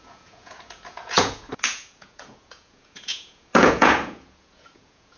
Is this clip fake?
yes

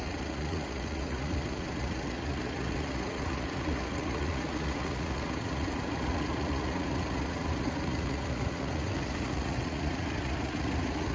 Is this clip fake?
yes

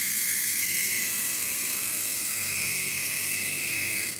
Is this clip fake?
yes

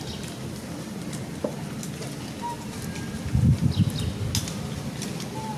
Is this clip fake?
no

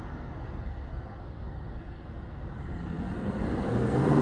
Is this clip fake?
yes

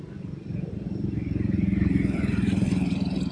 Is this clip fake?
yes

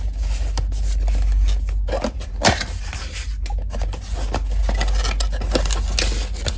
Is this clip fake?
no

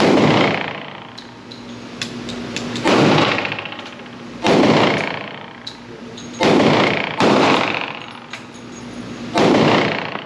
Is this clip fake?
no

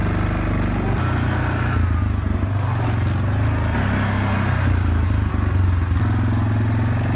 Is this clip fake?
no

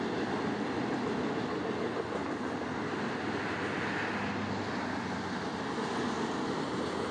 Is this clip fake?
no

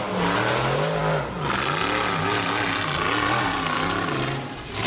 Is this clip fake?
no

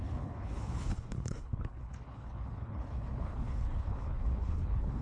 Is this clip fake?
yes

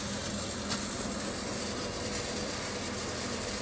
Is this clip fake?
no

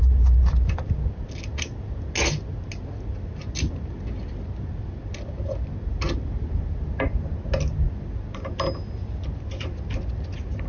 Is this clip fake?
no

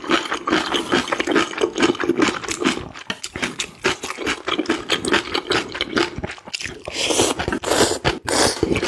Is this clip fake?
no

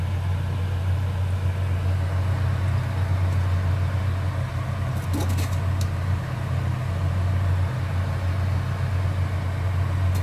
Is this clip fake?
no